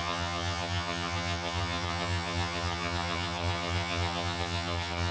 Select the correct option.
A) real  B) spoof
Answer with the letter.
B